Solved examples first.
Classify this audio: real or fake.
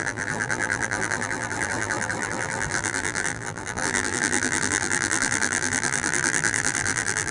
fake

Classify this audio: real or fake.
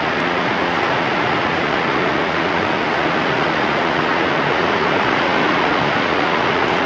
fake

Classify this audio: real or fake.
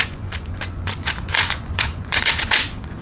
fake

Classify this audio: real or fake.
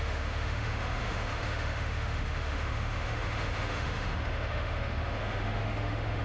fake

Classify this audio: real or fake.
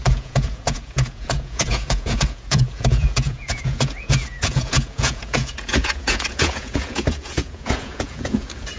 fake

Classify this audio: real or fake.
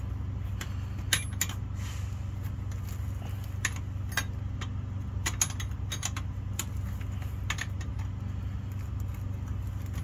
real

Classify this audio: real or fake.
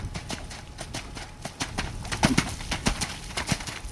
real